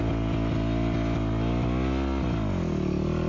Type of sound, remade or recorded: recorded